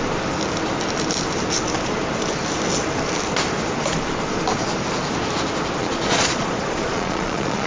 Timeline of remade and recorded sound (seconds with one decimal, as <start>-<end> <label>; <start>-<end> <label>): 0.0-5.8 recorded; 5.8-7.7 remade

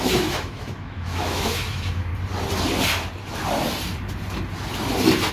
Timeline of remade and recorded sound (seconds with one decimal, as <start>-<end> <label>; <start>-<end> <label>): 0.0-2.1 remade; 2.1-5.3 recorded

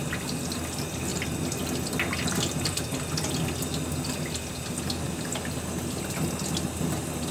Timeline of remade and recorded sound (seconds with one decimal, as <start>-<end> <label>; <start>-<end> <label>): 0.0-7.3 recorded

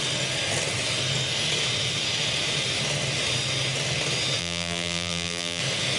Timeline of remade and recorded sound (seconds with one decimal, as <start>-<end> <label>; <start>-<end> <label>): 0.0-4.4 recorded; 4.4-5.6 remade; 5.6-6.0 recorded

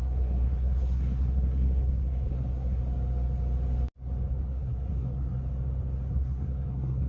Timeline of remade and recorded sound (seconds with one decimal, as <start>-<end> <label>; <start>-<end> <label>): 0.0-2.8 remade; 2.8-4.4 recorded; 4.4-5.4 remade; 5.4-6.1 recorded; 6.1-7.1 remade